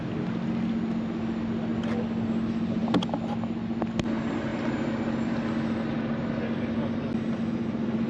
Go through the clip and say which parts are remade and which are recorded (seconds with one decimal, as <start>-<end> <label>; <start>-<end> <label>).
0.0-8.1 recorded